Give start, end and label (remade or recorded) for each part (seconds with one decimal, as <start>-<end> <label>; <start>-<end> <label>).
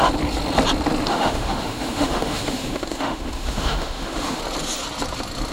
0.0-1.1 recorded; 1.1-4.4 remade; 4.4-5.5 recorded